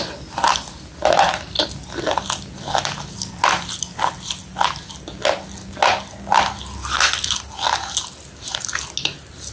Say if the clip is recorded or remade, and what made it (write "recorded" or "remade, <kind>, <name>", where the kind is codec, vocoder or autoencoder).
recorded